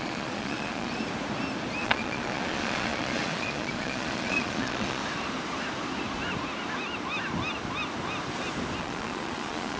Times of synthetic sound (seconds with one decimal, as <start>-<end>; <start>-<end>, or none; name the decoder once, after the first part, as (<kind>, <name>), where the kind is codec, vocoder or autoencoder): 0.0-0.9 (vocoder, Vocos); 1.8-5.0; 8.8-9.8